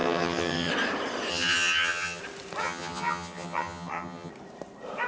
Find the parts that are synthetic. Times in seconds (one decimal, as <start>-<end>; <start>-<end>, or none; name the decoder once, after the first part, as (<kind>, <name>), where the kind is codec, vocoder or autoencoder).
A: 0.0-0.7 (vocoder, HiFi-GAN); 1.3-2.2; 2.6-4.3